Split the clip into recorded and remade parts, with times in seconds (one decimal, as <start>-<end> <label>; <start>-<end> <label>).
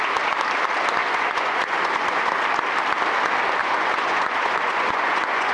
0.0-1.0 recorded; 1.0-2.4 remade; 2.4-3.6 recorded; 3.6-5.5 remade